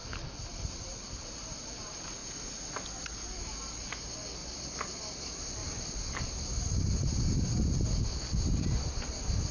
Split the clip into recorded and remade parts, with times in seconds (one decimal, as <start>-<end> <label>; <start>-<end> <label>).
0.0-4.4 recorded; 4.4-5.0 remade; 5.0-5.6 recorded; 5.6-9.5 remade